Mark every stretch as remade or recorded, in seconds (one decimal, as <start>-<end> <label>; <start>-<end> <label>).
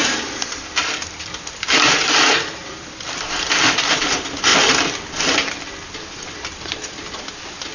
0.0-4.5 remade; 4.5-6.2 recorded; 6.2-7.7 remade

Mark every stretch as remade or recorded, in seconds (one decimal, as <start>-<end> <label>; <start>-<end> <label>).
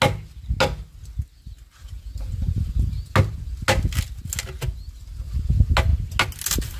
0.0-6.8 recorded